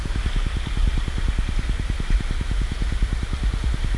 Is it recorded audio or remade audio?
recorded